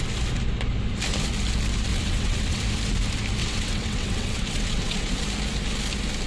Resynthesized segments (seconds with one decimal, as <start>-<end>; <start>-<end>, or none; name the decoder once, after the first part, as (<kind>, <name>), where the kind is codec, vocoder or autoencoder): 1.9-2.6 (vocoder, WaveNeXt); 3.4-5.2